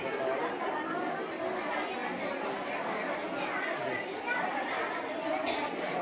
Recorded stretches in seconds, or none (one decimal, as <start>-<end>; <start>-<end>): 0.0-6.0